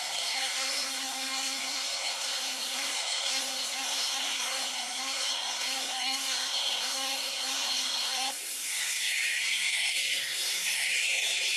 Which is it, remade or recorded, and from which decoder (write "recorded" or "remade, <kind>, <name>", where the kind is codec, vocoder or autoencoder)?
remade, codec, SNAC